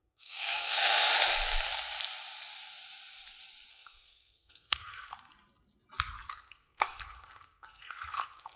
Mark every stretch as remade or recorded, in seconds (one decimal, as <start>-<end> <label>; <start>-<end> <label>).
0.0-1.1 remade; 1.1-3.7 recorded; 3.7-5.1 remade; 5.1-6.3 recorded; 6.3-8.6 remade